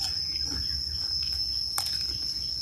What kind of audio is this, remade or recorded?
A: recorded